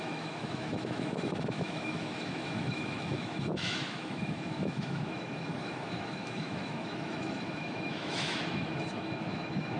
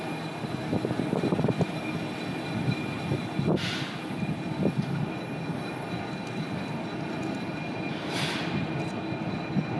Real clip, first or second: second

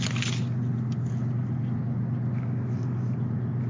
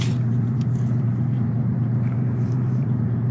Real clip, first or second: first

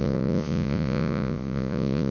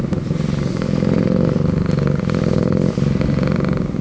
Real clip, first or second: second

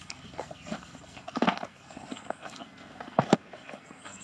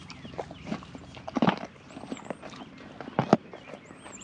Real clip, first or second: second